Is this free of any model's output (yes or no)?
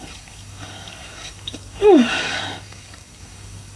no